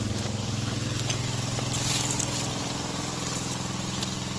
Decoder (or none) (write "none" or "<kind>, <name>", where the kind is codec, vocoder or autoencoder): none